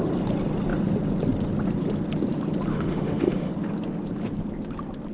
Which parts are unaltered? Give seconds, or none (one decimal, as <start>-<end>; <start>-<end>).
0.0-2.7; 3.5-5.1